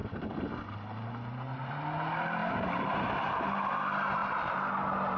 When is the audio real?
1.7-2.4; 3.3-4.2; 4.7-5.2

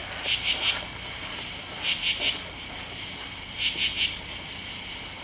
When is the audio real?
0.0-5.2

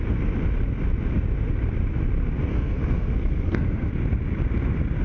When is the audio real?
0.0-2.5; 3.9-5.0

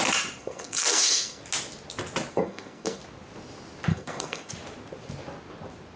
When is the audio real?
0.0-0.4; 1.4-2.3; 3.0-3.9; 4.5-6.0

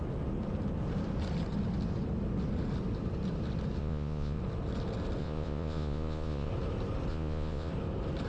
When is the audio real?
0.0-3.8; 4.4-5.2; 6.5-7.1; 7.7-8.3